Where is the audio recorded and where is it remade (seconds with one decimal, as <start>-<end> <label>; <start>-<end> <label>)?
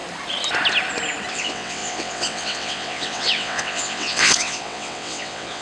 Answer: 0.0-1.3 recorded; 1.3-5.6 remade